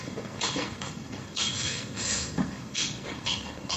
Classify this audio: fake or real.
fake